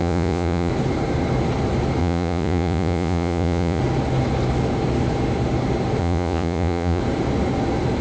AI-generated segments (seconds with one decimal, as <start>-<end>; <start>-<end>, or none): 0.0-0.7; 2.0-3.8; 6.0-7.0